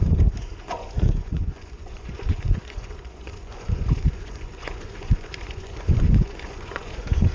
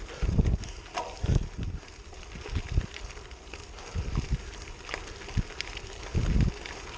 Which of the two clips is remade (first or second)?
first